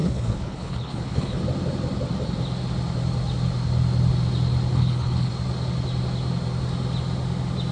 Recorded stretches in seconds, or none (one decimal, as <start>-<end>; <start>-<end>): 1.4-4.7; 5.3-7.7